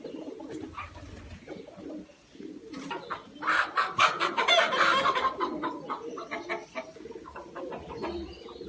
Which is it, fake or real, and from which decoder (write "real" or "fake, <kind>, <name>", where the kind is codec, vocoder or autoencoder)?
real